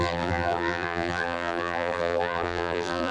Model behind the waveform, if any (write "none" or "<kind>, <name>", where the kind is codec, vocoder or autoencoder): vocoder, BigVGAN v2